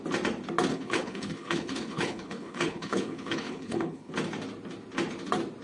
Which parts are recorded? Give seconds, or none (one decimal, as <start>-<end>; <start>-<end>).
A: 0.0-0.7; 4.1-5.6